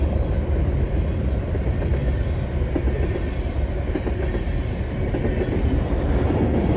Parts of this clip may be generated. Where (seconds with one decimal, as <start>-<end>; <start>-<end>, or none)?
none